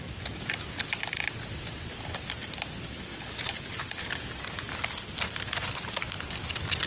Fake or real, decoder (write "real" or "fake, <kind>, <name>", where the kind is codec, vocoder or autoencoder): real